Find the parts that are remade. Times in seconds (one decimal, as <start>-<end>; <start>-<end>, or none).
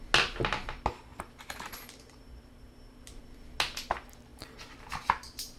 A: 1.1-3.2; 4.3-5.6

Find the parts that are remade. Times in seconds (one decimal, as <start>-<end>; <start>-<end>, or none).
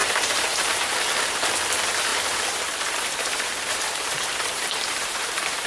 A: 0.0-0.9; 2.1-5.7